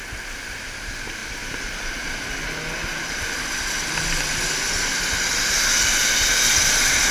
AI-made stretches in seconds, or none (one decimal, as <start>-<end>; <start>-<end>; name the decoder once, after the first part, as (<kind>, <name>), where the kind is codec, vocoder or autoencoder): none